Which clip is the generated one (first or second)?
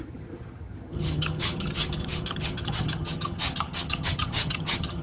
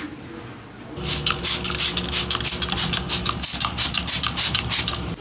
first